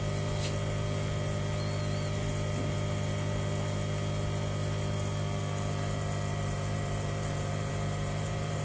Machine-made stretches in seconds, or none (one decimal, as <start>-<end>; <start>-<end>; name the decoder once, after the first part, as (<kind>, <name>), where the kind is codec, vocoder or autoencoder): 6.3-8.6 (vocoder, BigVGAN v2)